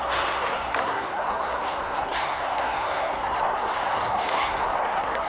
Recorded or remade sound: remade